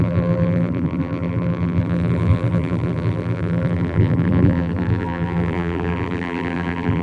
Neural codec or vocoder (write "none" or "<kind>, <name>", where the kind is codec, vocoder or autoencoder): vocoder, BigVGAN v2